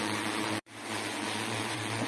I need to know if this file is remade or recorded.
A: remade